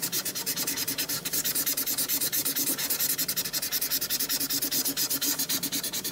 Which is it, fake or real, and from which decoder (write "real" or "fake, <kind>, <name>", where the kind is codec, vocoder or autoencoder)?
real